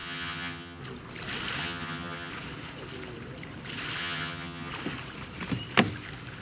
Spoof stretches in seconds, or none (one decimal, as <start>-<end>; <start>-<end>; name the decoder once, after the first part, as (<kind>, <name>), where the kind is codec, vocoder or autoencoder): 0.0-0.8 (vocoder, HiFi-GAN); 1.6-2.3; 4.0-4.7